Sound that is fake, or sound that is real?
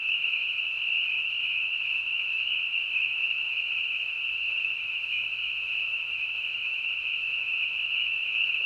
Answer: fake